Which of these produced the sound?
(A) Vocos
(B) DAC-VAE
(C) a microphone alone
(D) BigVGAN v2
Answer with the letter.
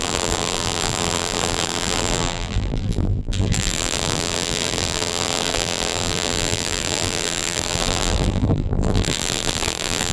D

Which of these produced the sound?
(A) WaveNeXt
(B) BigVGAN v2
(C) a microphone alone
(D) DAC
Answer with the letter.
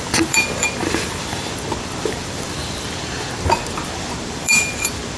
B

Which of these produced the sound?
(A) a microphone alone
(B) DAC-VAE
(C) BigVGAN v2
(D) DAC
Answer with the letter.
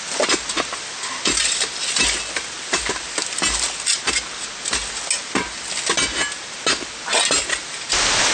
A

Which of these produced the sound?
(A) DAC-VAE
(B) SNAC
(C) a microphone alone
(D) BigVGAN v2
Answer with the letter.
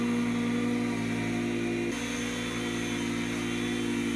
C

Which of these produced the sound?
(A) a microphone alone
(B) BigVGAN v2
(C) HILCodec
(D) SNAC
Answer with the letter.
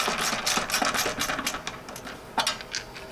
A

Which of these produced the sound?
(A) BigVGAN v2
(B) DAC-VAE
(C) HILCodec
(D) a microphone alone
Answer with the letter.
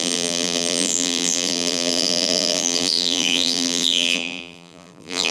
A